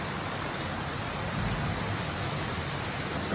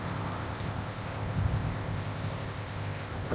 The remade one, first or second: second